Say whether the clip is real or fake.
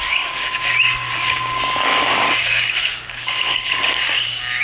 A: fake